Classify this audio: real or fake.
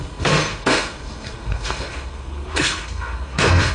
fake